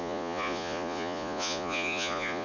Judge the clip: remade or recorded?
remade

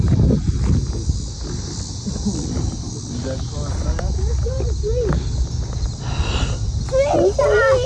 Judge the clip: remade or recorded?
recorded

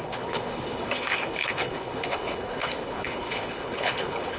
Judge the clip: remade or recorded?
remade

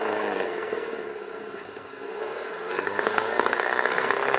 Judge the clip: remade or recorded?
remade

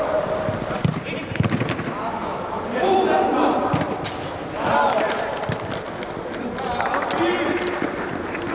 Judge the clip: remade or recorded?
recorded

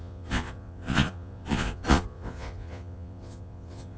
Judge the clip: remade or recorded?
remade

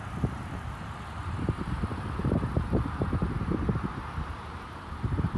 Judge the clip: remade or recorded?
remade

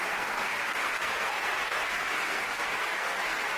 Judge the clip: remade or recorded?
remade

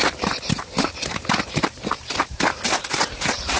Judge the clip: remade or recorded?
recorded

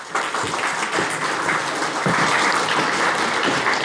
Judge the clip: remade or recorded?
recorded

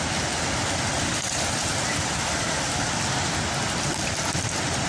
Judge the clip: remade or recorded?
recorded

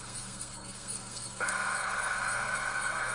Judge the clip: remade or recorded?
remade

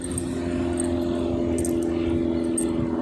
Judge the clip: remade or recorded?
recorded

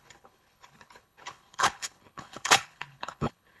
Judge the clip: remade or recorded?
remade